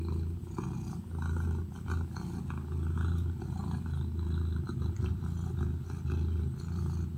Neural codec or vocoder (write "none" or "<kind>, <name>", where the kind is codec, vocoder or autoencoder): none